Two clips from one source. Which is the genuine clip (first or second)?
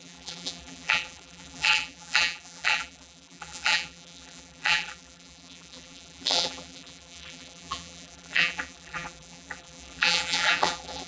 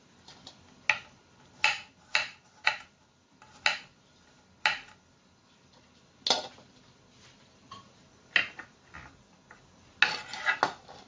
second